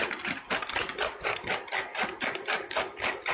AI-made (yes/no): no